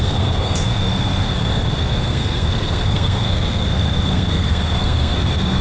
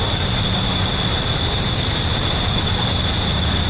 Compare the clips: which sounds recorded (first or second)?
second